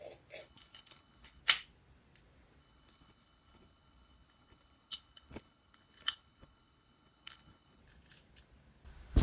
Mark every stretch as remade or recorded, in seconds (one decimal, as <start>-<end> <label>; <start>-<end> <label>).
0.0-0.4 recorded; 0.4-1.4 remade; 1.4-2.6 recorded; 2.6-7.8 remade; 7.8-9.2 recorded